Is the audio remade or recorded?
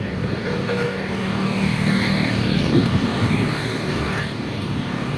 remade